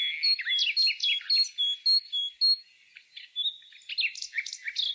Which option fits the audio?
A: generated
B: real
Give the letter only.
B